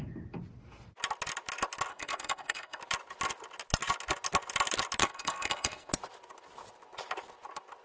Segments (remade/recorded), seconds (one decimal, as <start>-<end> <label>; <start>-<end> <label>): 0.0-1.9 recorded; 1.9-2.8 remade; 2.8-5.0 recorded; 5.0-5.9 remade; 5.9-7.8 recorded